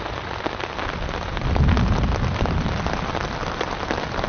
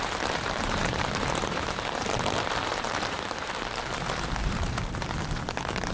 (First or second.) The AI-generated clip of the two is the second